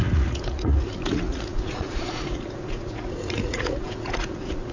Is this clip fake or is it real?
fake